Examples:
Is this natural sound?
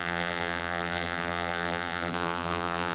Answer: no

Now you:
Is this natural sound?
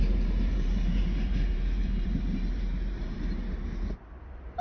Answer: no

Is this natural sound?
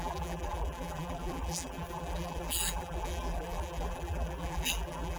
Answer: no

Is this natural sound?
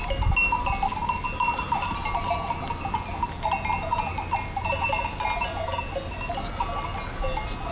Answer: yes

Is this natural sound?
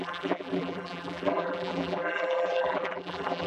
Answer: no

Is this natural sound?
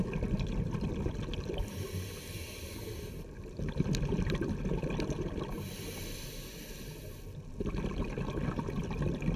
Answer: yes